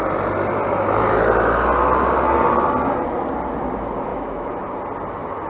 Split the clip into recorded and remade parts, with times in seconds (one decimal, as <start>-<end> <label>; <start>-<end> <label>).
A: 0.0-4.1 recorded; 4.1-4.6 remade; 4.6-5.5 recorded